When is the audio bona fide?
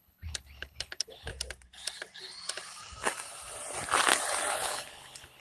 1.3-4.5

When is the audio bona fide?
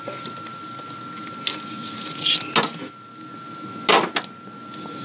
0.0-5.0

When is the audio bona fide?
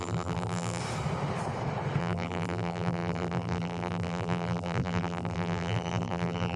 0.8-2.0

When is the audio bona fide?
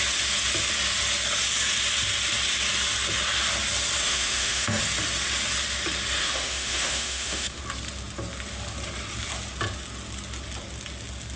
0.0-4.0; 4.8-6.2; 7.6-11.4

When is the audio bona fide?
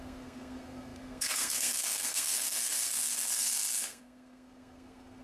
none